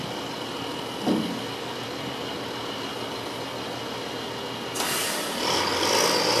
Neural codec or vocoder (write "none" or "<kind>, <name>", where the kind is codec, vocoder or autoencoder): none